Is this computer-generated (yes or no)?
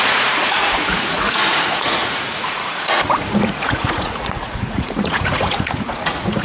yes